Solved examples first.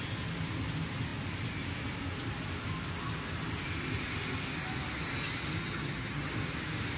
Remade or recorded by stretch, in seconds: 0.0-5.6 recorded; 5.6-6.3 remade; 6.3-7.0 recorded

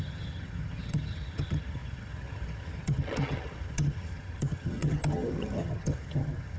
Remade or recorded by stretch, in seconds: 0.0-6.6 remade

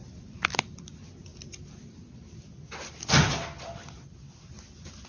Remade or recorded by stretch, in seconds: 0.0-5.1 recorded

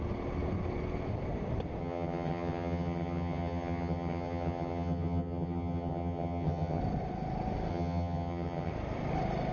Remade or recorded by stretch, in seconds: 0.0-1.8 recorded; 1.8-6.8 remade; 6.8-7.7 recorded; 7.7-8.7 remade; 8.7-9.5 recorded

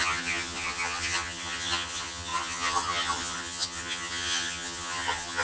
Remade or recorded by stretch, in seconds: 0.0-5.4 remade